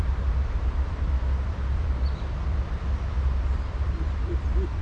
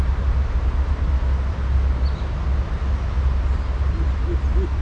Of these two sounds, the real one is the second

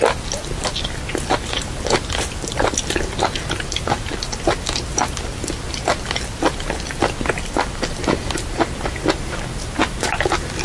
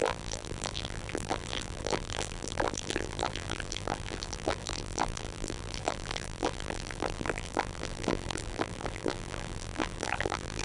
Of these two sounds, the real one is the first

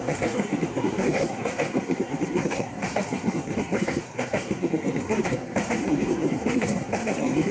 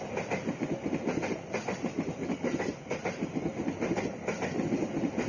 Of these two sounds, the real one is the second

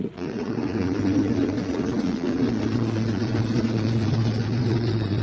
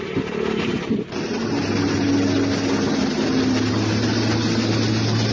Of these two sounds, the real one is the second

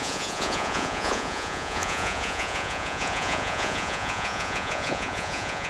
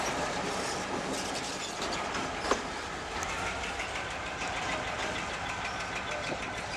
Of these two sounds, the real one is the second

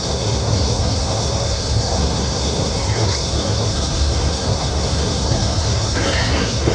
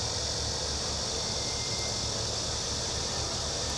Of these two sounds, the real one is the second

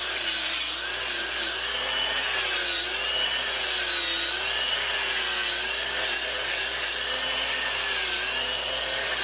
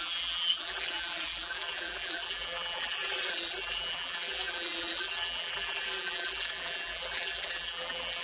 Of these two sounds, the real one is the first